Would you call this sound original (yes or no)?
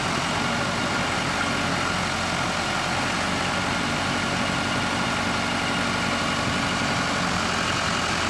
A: yes